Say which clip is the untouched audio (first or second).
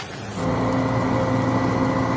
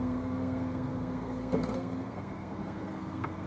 first